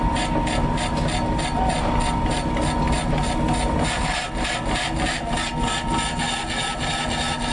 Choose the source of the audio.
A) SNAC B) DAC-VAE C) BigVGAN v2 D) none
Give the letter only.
D